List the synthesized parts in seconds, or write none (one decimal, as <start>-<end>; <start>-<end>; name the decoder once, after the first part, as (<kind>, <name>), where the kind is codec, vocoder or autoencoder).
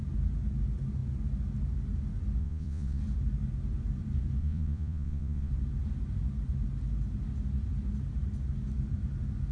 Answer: 2.4-3.0 (vocoder, Vocos); 4.4-5.5